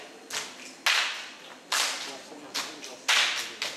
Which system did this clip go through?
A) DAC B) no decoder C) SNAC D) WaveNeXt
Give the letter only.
B